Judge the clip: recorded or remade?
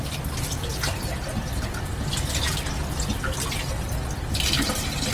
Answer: recorded